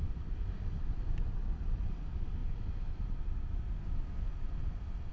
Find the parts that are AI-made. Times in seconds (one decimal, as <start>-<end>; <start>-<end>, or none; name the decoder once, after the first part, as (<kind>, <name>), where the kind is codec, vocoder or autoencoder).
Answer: none